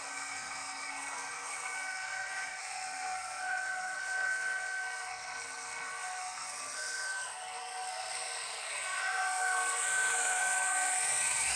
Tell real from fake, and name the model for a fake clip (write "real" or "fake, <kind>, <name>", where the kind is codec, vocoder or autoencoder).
fake, codec, SNAC